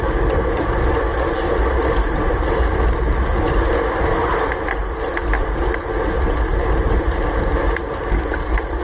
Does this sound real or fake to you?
real